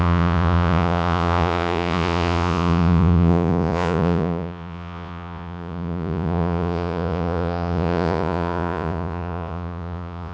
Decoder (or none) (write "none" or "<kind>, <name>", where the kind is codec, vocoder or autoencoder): vocoder, Vocos